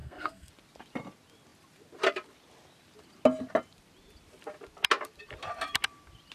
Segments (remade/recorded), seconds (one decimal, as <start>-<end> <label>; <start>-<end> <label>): 0.0-0.5 remade; 0.5-6.3 recorded